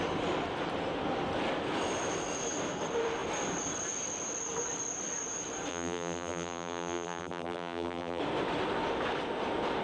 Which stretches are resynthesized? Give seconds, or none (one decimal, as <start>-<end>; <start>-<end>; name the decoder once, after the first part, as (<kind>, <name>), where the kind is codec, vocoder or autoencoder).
5.7-8.2 (vocoder, BigVGAN v2)